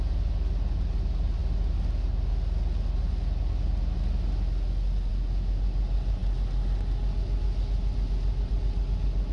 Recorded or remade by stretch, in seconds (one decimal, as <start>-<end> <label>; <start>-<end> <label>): 0.0-9.3 recorded